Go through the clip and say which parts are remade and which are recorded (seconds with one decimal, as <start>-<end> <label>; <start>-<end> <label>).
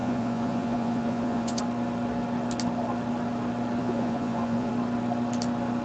0.0-1.6 remade; 1.6-3.8 recorded; 3.8-4.7 remade; 4.7-5.8 recorded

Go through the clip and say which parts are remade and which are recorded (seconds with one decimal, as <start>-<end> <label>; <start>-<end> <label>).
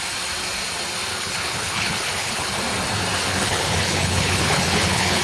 0.0-1.1 recorded; 1.1-2.6 remade; 2.6-3.3 recorded; 3.3-5.2 remade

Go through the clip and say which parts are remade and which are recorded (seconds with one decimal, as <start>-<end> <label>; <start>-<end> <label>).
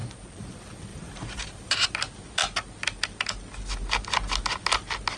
0.0-0.5 remade; 0.5-0.9 recorded; 0.9-2.0 remade; 2.0-5.2 recorded